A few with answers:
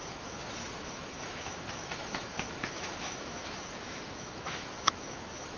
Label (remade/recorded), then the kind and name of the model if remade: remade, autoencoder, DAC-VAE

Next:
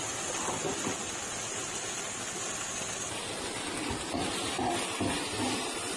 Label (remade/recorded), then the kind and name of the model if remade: recorded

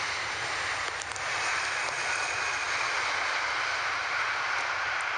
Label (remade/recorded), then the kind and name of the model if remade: recorded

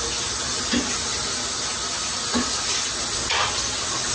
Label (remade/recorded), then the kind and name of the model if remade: recorded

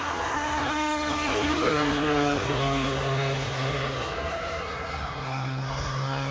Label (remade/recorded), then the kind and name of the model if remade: remade, codec, SNAC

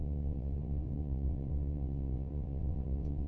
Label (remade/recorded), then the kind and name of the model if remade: remade, vocoder, WaveNeXt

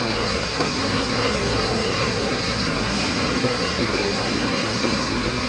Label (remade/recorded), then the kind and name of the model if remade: remade, codec, SNAC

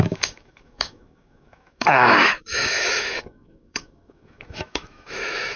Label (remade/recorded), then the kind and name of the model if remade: remade, autoencoder, DAC-VAE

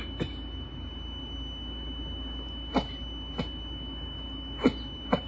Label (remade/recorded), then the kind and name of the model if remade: recorded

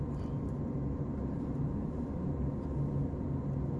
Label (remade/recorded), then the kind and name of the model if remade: recorded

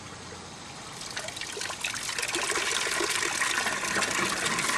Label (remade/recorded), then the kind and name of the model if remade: recorded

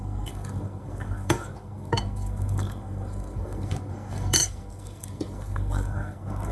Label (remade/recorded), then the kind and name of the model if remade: remade, codec, SNAC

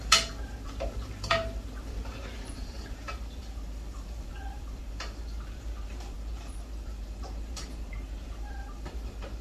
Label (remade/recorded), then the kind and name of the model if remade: remade, vocoder, BigVGAN v2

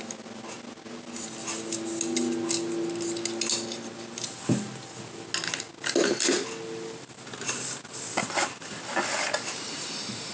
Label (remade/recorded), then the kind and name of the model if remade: recorded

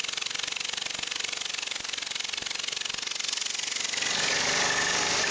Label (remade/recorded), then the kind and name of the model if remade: recorded